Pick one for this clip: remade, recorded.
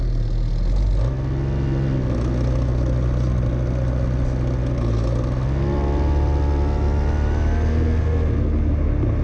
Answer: recorded